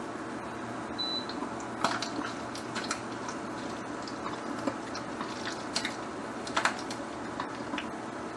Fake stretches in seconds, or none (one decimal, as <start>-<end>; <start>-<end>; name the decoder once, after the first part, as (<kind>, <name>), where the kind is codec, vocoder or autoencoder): 3.0-5.3 (vocoder, BigVGAN v2); 6.2-7.8